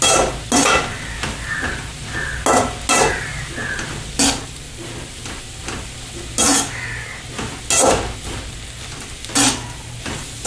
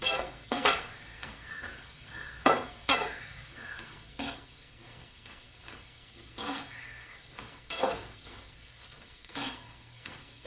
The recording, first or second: first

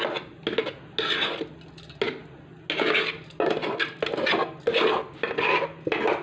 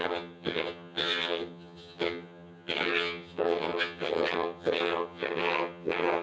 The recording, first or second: first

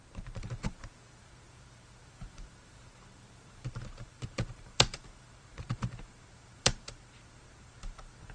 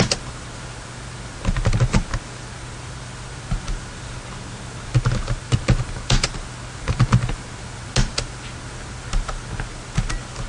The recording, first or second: second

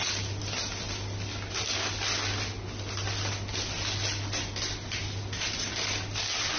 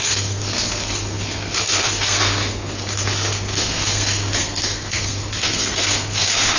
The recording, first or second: first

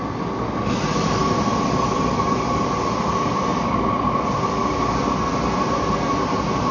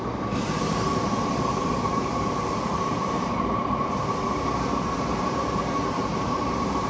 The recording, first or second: first